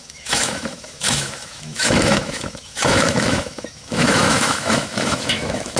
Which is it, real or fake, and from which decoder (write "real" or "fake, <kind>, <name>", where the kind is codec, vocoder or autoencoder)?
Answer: fake, autoencoder, DAC-VAE